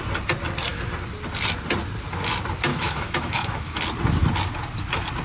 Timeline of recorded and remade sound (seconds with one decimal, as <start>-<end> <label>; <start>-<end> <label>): 0.0-2.7 recorded; 2.7-3.8 remade; 3.8-5.2 recorded